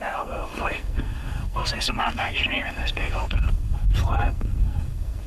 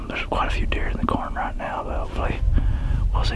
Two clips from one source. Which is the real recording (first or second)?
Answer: second